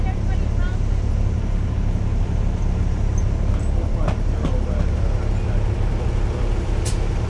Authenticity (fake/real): real